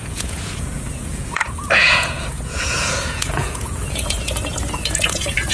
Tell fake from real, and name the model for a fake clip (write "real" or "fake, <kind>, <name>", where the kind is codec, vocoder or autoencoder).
fake, vocoder, Vocos